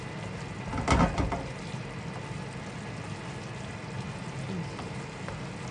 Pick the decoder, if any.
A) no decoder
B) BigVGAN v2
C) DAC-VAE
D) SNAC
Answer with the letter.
A